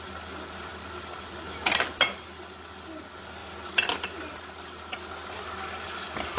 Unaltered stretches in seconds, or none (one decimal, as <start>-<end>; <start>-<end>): 0.0-6.4